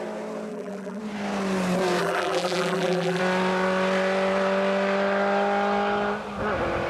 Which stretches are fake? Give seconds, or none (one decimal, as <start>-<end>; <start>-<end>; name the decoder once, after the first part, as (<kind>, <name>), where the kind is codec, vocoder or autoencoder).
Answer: 0.5-1.0 (vocoder, BigVGAN v2); 2.0-3.2